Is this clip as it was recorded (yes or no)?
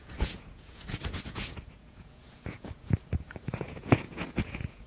no